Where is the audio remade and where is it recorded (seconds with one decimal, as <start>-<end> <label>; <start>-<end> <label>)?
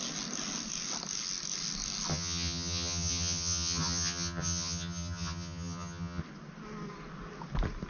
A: 0.0-2.1 recorded; 2.1-6.2 remade; 6.2-7.9 recorded